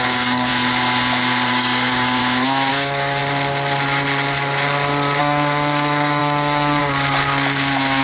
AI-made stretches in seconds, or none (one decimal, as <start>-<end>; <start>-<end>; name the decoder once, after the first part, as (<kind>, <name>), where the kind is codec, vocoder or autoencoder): 0.0-0.5 (codec, DAC); 1.5-2.2; 2.7-3.2; 5.2-8.0